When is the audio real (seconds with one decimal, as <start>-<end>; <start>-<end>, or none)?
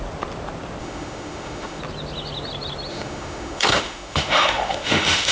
0.0-0.8; 1.8-2.9